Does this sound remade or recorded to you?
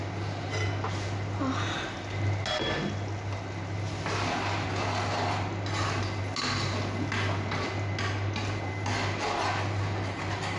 recorded